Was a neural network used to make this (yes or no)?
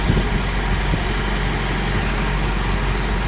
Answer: no